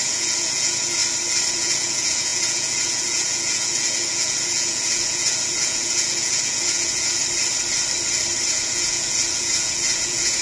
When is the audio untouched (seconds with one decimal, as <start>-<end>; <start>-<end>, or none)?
1.0-1.5; 7.2-8.5